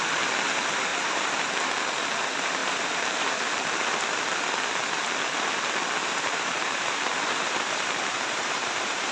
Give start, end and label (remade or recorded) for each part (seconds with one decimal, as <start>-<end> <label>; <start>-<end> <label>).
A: 0.0-0.9 recorded; 0.9-1.5 remade; 1.5-2.6 recorded; 2.6-3.3 remade; 3.3-6.0 recorded; 6.0-9.1 remade